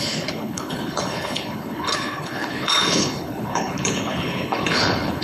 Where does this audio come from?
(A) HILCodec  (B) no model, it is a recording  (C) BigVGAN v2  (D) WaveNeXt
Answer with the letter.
A